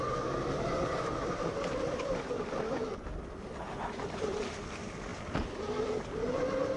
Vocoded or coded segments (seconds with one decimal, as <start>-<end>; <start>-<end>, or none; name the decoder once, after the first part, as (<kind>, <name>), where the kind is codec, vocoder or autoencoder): none